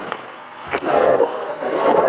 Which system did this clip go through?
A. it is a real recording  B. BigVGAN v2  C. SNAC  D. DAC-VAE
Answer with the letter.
C